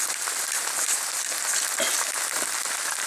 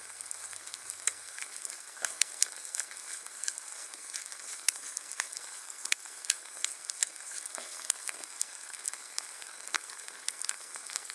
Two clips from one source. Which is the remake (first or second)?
second